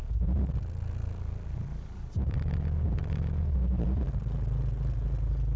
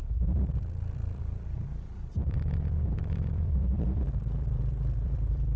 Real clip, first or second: first